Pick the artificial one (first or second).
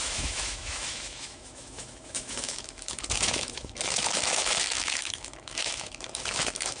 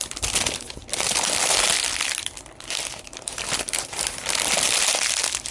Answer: first